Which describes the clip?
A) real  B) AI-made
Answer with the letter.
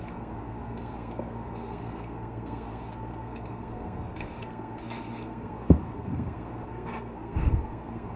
B